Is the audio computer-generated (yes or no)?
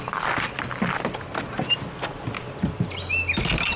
no